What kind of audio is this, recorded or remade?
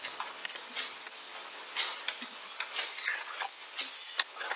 recorded